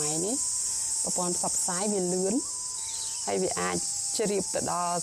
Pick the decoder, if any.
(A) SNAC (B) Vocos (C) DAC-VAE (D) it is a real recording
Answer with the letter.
D